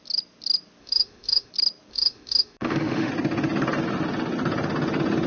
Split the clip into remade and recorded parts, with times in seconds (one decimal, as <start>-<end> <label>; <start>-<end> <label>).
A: 0.0-0.8 recorded; 0.8-1.5 remade; 1.5-1.9 recorded; 1.9-3.1 remade; 3.1-5.3 recorded